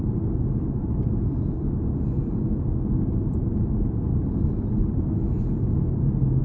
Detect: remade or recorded recorded